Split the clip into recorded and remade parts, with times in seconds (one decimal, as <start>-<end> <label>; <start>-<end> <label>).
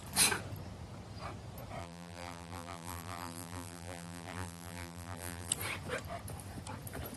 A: 0.0-1.8 recorded; 1.8-5.5 remade; 5.5-7.2 recorded